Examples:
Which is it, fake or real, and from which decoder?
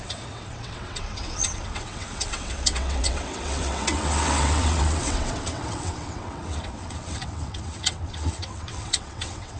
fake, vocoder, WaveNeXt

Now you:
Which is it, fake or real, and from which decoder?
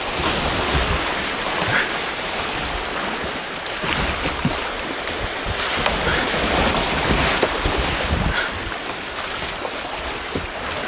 real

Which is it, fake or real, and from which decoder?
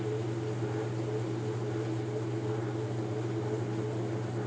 real